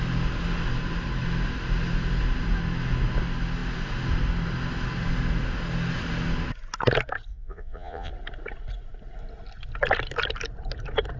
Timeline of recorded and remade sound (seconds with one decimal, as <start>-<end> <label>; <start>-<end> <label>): 0.0-7.3 recorded; 7.3-8.1 remade; 8.1-11.2 recorded